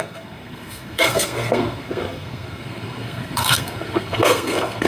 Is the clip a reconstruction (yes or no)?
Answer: yes